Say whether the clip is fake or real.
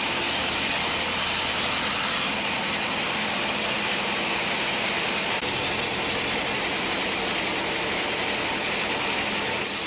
real